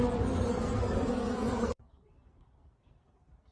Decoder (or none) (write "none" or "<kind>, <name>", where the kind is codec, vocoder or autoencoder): codec, SNAC